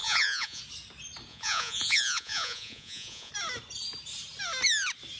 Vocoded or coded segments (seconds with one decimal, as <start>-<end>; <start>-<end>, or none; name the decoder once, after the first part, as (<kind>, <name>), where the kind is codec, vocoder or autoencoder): 0.0-0.6 (vocoder, Vocos); 1.3-3.3